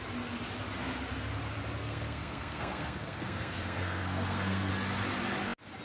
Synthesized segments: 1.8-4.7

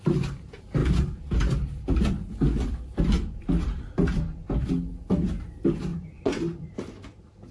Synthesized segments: 5.9-6.7

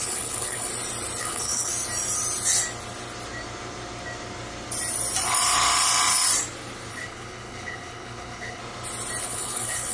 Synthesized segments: 0.0-0.7; 1.2-1.7; 6.9-8.6; 9.2-9.9

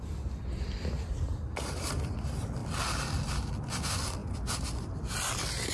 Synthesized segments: none

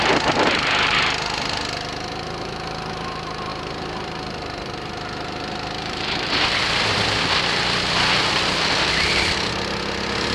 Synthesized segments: 3.5-8.7

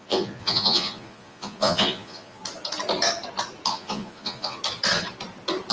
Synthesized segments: 0.0-2.4; 3.7-4.6

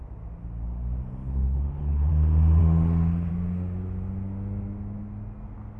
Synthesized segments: 1.2-2.1